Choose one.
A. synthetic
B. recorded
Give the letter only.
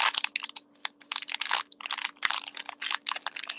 B